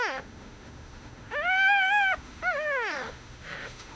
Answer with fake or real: fake